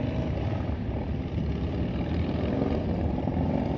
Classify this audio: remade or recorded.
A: recorded